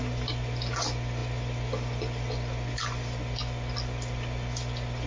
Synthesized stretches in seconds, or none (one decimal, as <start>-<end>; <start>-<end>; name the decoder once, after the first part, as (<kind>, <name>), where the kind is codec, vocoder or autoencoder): none